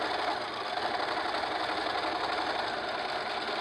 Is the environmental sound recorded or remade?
recorded